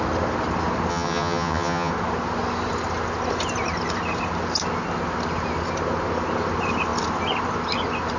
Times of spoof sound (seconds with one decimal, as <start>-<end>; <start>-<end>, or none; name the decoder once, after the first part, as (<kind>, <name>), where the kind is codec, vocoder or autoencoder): 0.9-1.9 (vocoder, HiFi-GAN)